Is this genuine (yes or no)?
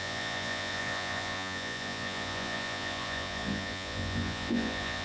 no